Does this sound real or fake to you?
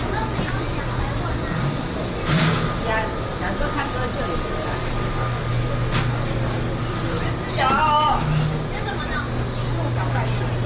real